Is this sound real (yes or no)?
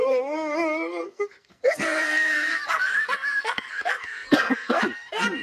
no